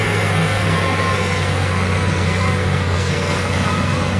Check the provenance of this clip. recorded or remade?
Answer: remade